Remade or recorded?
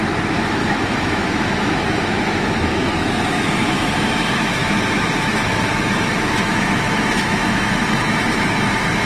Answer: remade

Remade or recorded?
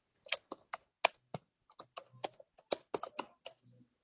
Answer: recorded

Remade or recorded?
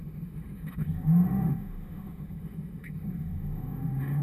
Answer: remade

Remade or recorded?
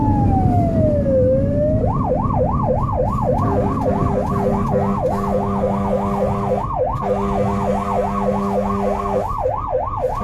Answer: recorded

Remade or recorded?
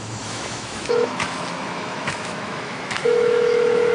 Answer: remade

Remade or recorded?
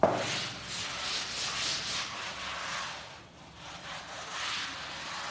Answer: recorded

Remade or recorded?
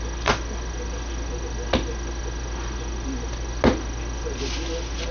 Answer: recorded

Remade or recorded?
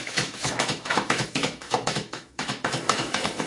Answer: remade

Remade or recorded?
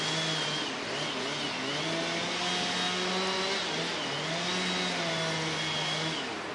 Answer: recorded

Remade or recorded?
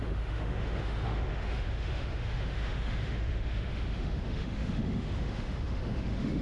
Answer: remade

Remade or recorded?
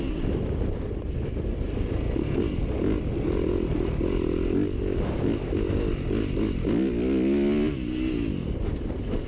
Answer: recorded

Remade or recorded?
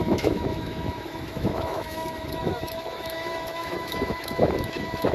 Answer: remade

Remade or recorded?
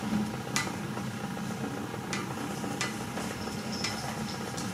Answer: recorded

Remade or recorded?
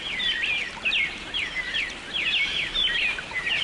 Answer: recorded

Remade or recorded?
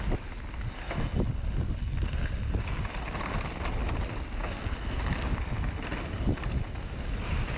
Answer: recorded